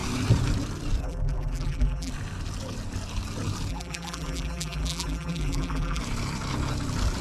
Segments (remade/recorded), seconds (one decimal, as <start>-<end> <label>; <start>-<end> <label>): 0.0-1.0 recorded; 1.0-2.1 remade; 2.1-3.7 recorded; 3.7-6.0 remade; 6.0-7.2 recorded